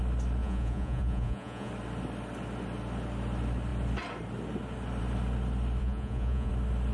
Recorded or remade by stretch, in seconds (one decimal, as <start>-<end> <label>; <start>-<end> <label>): 0.0-0.4 recorded; 0.4-1.7 remade; 1.7-5.8 recorded; 5.8-6.5 remade; 6.5-6.9 recorded

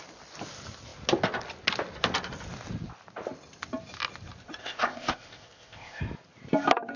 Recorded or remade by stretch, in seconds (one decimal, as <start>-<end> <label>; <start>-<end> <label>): 0.0-4.6 recorded; 4.6-6.0 remade; 6.0-7.0 recorded

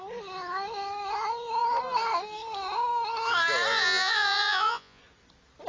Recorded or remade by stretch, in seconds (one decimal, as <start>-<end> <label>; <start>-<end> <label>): 0.0-3.7 recorded; 3.7-5.0 remade; 5.0-5.7 recorded